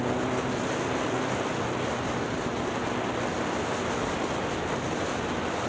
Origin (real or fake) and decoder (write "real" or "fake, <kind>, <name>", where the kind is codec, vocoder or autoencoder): real